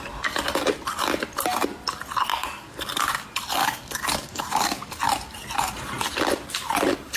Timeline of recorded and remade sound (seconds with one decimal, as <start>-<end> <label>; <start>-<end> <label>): 0.0-2.3 recorded; 2.3-2.9 remade; 2.9-3.6 recorded; 3.6-5.0 remade; 5.0-7.2 recorded